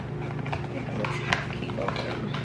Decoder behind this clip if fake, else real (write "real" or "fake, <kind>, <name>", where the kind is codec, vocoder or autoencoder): real